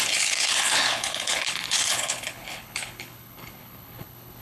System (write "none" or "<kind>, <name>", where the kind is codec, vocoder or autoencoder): codec, HILCodec